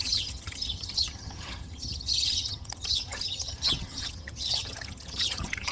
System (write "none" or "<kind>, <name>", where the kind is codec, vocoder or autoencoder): vocoder, HiFi-GAN